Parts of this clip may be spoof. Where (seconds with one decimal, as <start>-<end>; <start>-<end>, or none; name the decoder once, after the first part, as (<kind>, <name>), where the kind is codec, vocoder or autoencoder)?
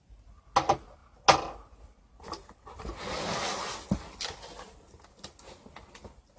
none